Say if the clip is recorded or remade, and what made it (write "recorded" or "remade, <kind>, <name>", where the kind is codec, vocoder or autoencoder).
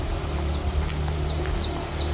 recorded